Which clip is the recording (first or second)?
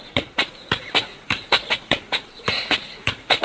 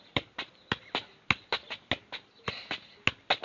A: second